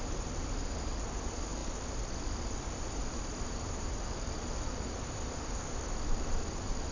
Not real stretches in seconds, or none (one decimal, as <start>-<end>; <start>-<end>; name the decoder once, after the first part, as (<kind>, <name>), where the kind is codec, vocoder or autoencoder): none